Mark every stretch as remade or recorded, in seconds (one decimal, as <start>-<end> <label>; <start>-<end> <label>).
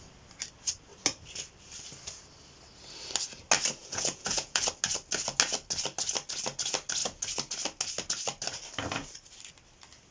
0.0-3.8 recorded; 3.8-4.7 remade; 4.7-10.1 recorded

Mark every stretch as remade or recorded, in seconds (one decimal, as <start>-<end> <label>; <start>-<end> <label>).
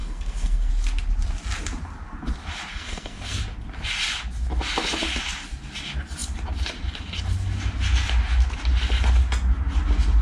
0.0-0.7 remade; 0.7-2.7 recorded; 2.7-3.4 remade; 3.4-10.2 recorded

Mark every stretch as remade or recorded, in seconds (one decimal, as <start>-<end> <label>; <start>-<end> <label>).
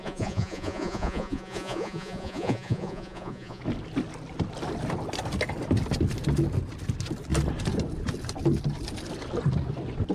0.0-3.6 remade; 3.6-10.1 recorded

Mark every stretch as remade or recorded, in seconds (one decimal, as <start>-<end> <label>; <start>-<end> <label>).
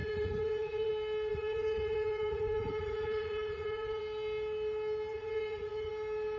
0.0-0.9 remade; 0.9-1.3 recorded; 1.3-4.0 remade; 4.0-5.1 recorded; 5.1-5.9 remade; 5.9-6.4 recorded